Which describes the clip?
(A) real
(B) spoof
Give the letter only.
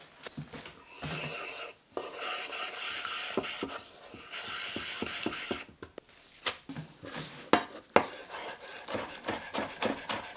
A